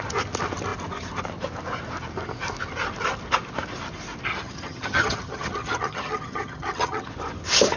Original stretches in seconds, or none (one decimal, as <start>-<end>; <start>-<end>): 0.0-4.3; 7.1-7.8